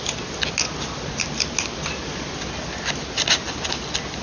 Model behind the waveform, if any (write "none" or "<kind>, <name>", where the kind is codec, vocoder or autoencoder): none